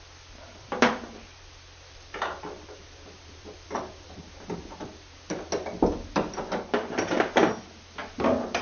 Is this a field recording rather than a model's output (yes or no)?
yes